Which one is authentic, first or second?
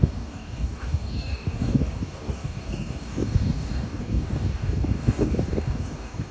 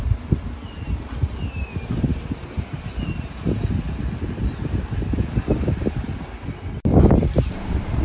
second